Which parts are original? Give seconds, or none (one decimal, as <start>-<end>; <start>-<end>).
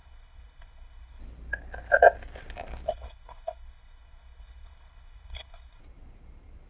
1.2-2.9; 5.8-6.7